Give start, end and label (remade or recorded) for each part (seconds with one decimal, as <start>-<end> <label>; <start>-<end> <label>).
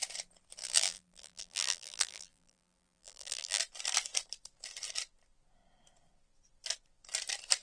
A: 0.0-0.6 recorded; 0.6-3.6 remade; 3.6-7.6 recorded